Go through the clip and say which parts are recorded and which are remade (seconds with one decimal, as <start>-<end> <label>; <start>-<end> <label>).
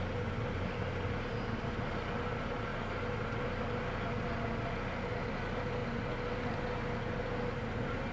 0.0-8.1 recorded